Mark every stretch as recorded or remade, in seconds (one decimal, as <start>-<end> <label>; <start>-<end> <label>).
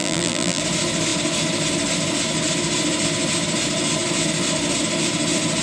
0.0-0.6 remade; 0.6-5.6 recorded